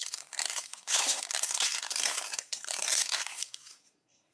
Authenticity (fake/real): fake